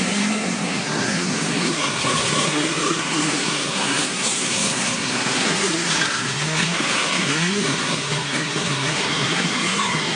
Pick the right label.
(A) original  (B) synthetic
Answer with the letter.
B